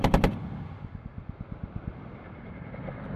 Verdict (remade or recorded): recorded